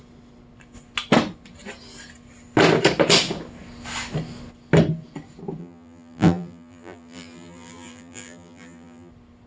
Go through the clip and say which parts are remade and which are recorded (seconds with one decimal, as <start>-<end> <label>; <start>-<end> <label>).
0.0-5.6 recorded; 5.6-9.1 remade; 9.1-9.5 recorded